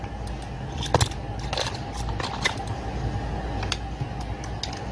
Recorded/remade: recorded